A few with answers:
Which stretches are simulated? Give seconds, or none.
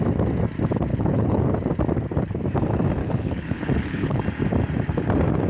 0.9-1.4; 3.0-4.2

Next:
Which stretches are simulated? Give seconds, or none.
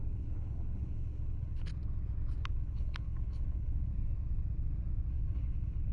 0.0-1.7; 2.5-3.9; 5.1-5.9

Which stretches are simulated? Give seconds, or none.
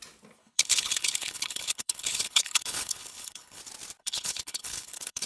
0.4-3.6; 4.0-5.3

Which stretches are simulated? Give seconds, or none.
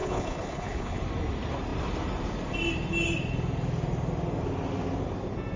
0.0-1.0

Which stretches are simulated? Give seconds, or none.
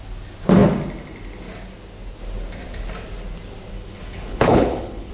3.7-5.1